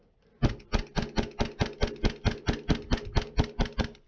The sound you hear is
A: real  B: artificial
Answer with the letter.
A